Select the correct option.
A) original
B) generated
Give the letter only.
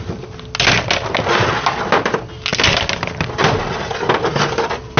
A